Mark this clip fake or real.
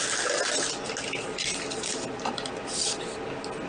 real